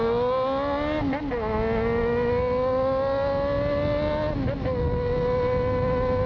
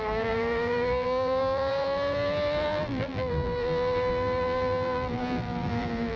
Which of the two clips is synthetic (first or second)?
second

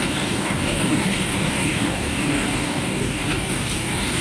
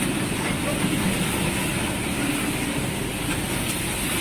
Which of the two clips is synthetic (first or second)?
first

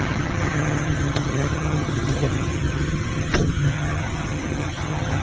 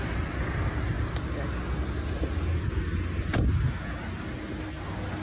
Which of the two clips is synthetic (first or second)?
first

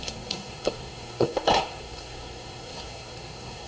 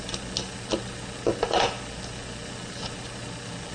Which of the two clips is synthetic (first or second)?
first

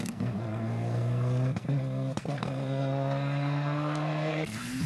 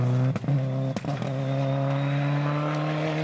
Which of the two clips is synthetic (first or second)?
first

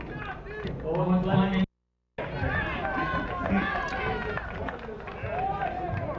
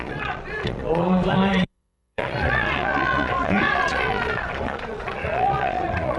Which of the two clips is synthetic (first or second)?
second